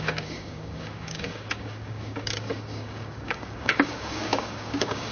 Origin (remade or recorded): remade